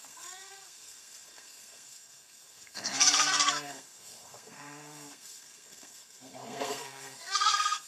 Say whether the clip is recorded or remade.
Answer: remade